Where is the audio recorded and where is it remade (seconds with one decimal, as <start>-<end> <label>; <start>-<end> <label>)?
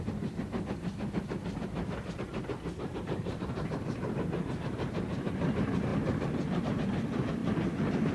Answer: 0.0-7.4 remade; 7.4-8.1 recorded